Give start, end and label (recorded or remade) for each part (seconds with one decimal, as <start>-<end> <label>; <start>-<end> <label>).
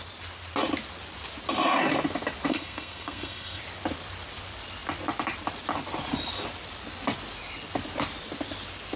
0.0-2.5 recorded; 2.5-3.6 remade; 3.6-9.0 recorded